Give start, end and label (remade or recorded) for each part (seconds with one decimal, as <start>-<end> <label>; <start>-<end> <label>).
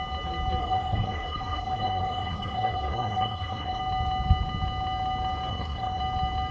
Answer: 0.0-0.6 recorded; 0.6-3.8 remade; 3.8-5.5 recorded; 5.5-6.0 remade; 6.0-6.5 recorded